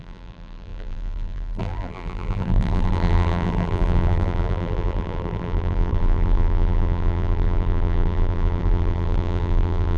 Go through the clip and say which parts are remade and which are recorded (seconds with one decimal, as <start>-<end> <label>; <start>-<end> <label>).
0.0-10.0 remade